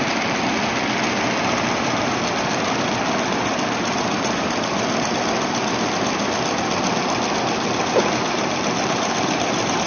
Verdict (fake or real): real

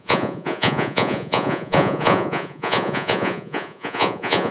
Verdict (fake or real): fake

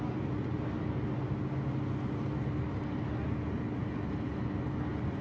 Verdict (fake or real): real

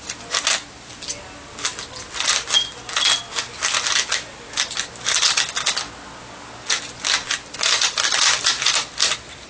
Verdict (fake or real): real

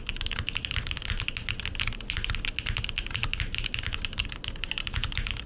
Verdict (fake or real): real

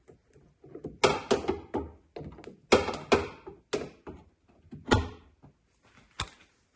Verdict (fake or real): real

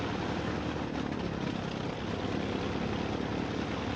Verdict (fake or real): real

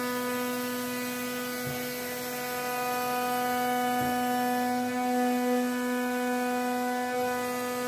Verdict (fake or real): real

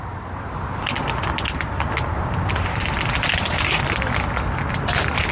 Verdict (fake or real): real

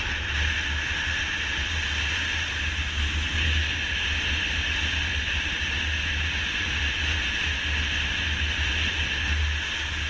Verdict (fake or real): real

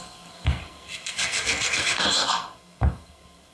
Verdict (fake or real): fake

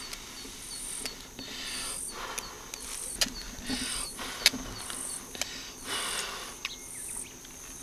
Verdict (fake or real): real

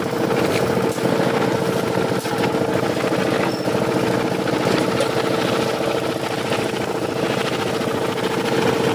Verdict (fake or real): real